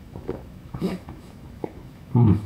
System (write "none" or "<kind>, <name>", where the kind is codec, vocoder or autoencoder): autoencoder, DAC-VAE